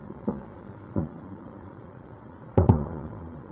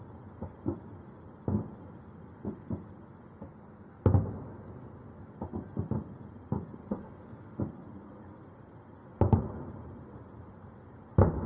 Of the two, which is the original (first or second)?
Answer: second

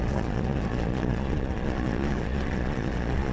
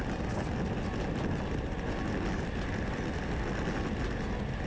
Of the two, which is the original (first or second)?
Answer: second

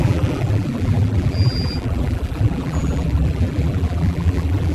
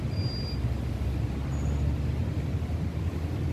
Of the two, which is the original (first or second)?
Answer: second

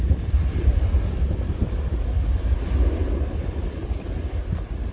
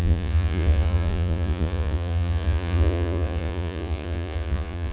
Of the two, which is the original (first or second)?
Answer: first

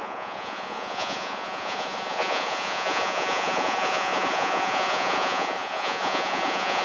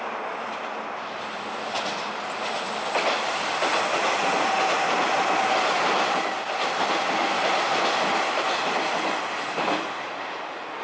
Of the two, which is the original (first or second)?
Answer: second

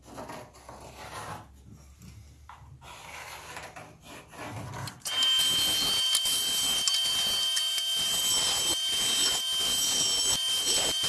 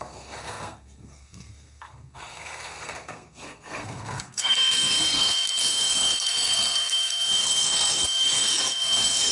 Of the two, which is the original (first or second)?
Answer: first